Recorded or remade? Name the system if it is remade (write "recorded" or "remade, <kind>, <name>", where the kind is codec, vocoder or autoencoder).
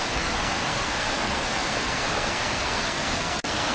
remade, codec, SNAC